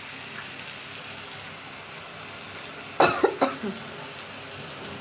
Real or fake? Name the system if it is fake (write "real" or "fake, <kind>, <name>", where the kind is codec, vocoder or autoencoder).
real